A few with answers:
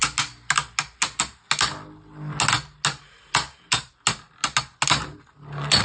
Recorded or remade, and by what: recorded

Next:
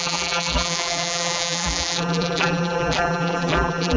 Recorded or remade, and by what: remade, vocoder, BigVGAN v2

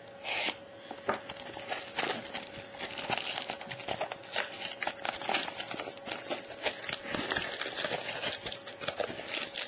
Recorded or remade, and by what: recorded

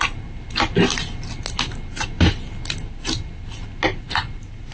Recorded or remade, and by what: recorded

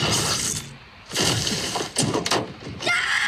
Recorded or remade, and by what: recorded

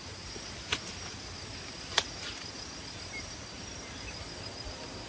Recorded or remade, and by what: recorded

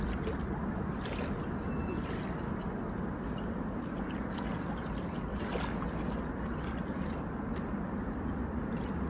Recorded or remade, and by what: recorded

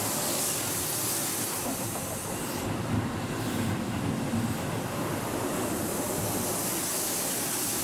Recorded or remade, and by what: recorded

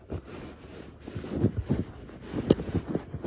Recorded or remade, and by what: recorded